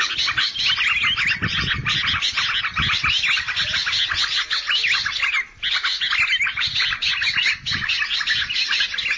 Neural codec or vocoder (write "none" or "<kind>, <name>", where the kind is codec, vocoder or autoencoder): none